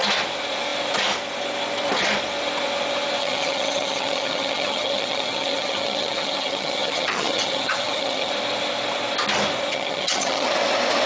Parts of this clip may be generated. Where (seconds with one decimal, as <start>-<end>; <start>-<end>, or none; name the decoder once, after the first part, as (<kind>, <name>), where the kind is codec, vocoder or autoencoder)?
3.2-8.3 (vocoder, HiFi-GAN); 9.7-10.5